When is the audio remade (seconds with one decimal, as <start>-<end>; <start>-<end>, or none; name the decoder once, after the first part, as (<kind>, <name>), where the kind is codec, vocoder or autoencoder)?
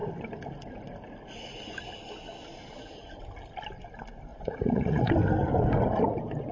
4.3-5.1 (vocoder, Vocos)